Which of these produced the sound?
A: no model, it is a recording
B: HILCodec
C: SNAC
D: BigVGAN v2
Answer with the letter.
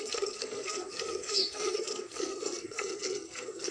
C